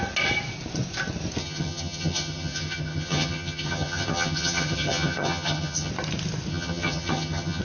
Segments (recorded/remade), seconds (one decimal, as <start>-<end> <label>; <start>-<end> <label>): 0.0-1.4 recorded; 1.4-5.9 remade; 5.9-6.5 recorded; 6.5-7.6 remade